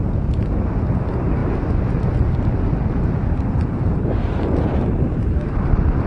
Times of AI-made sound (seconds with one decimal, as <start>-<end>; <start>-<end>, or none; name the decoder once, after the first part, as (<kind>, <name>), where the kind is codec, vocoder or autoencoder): 0.0-1.4 (vocoder, BigVGAN v2); 3.5-6.1